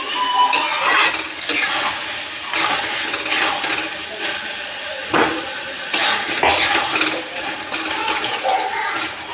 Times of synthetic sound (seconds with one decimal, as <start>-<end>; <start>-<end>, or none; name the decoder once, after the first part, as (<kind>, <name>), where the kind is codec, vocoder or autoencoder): 5.0-7.4 (vocoder, BigVGAN v2)